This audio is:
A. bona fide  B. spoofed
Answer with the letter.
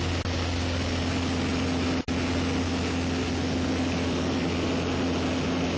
A